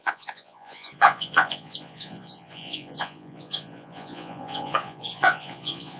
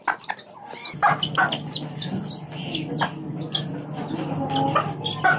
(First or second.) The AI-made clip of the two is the first